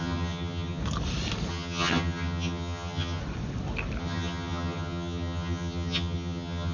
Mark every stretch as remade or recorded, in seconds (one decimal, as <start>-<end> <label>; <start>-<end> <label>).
0.0-0.8 remade; 0.8-1.5 recorded; 1.5-3.2 remade; 3.2-4.0 recorded; 4.0-6.7 remade